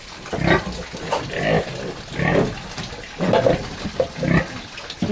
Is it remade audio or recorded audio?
recorded